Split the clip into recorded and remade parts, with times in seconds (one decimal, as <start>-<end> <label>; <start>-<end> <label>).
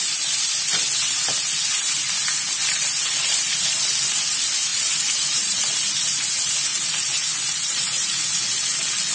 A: 0.0-4.7 recorded; 4.7-5.8 remade; 5.8-6.7 recorded; 6.7-8.4 remade; 8.4-9.1 recorded